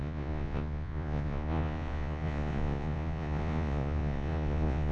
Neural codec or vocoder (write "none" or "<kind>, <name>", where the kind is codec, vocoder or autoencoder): vocoder, Vocos